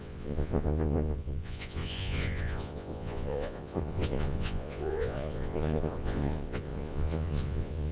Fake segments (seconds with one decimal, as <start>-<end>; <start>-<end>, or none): 0.0-7.9